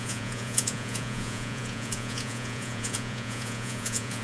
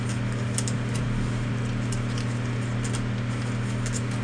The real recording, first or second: second